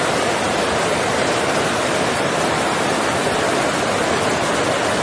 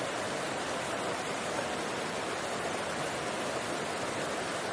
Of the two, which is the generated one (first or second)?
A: second